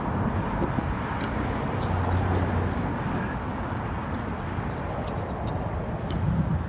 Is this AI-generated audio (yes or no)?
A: no